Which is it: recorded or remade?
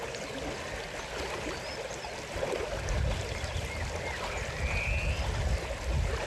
recorded